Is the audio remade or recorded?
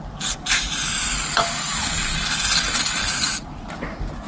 recorded